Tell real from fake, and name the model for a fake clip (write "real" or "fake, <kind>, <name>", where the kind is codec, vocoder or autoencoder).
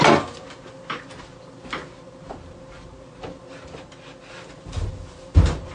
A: real